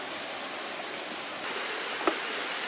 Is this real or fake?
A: real